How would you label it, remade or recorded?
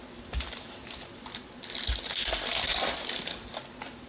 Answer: recorded